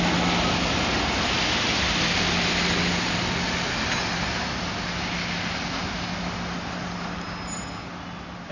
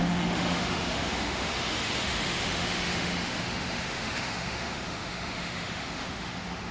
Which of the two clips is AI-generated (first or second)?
second